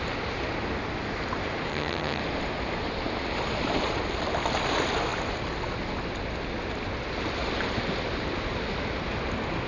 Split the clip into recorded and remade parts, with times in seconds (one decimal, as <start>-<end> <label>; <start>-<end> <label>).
0.0-1.7 recorded; 1.7-2.2 remade; 2.2-9.7 recorded